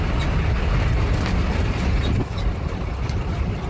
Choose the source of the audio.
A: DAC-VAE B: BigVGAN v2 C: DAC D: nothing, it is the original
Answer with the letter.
D